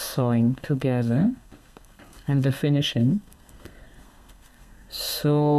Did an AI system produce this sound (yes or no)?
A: yes